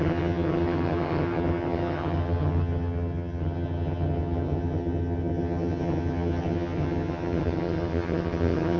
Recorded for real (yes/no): no